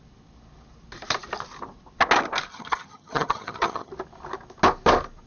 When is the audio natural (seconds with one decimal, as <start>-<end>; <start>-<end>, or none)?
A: 0.0-2.5; 3.9-5.3